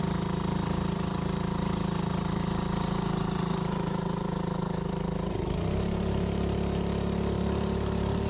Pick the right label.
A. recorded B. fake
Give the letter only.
B